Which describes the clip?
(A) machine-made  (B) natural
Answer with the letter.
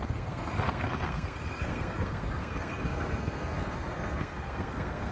A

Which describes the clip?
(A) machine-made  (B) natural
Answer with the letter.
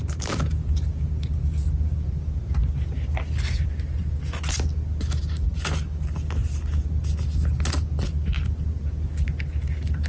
B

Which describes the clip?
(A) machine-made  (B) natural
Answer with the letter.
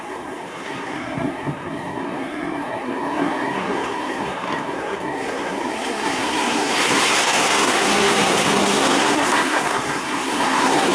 A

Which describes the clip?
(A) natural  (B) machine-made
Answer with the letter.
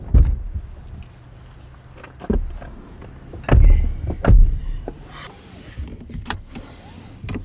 A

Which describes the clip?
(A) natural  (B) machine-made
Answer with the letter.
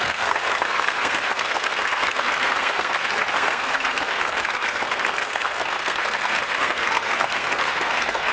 B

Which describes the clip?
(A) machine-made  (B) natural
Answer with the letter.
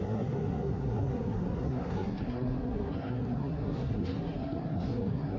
A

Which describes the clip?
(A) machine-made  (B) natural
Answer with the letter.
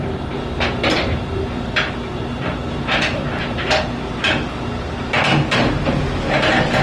B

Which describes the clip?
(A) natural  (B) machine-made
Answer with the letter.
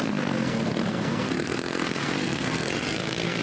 B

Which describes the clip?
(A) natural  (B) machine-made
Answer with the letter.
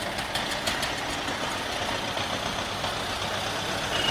A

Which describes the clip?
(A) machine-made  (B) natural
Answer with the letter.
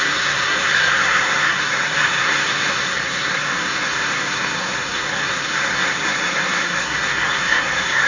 A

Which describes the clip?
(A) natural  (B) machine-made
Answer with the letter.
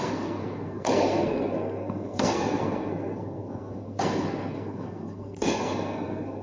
B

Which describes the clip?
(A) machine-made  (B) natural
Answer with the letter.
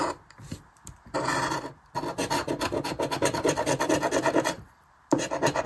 B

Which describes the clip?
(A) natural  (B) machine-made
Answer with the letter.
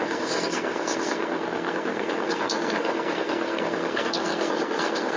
B